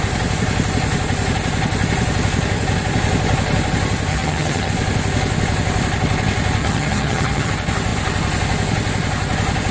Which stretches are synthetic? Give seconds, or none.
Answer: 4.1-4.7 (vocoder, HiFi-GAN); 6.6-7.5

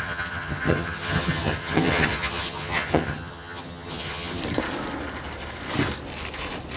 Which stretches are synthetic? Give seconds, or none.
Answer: 0.0-4.4 (vocoder, HiFi-GAN)

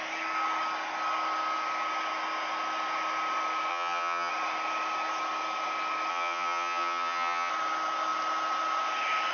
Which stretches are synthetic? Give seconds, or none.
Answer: 3.7-4.3 (vocoder, HiFi-GAN); 6.1-7.5

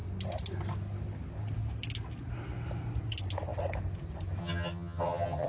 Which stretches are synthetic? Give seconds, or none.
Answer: 4.4-5.5 (vocoder, HiFi-GAN)

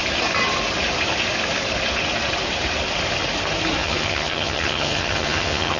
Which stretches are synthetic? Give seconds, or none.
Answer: 3.8-5.8 (vocoder, HiFi-GAN)

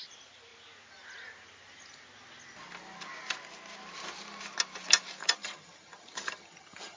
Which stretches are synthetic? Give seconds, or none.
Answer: 5.2-7.0 (vocoder, HiFi-GAN)

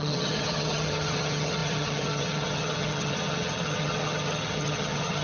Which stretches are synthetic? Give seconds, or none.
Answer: 0.0-5.2 (vocoder, HiFi-GAN)